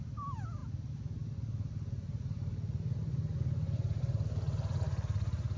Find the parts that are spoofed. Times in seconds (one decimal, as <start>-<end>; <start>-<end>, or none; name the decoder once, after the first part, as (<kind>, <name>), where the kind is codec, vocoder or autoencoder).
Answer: none